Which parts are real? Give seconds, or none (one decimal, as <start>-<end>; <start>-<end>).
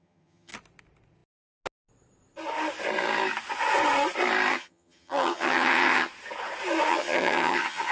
0.5-4.5; 6.1-6.9